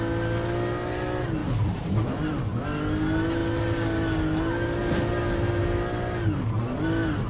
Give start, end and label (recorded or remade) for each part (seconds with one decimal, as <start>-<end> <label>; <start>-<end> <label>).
0.0-1.4 recorded; 1.4-2.6 remade; 2.6-7.3 recorded